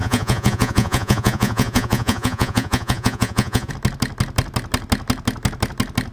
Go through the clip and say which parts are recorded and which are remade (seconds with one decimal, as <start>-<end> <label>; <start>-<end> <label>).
0.0-3.7 remade; 3.7-6.1 recorded